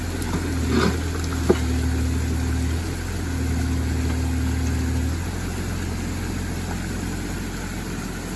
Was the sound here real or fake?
real